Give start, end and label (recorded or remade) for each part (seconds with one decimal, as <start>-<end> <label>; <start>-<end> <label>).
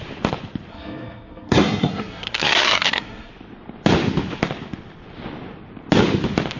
0.0-0.7 recorded; 0.7-3.3 remade; 3.3-6.6 recorded